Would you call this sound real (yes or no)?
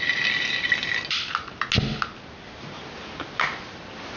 yes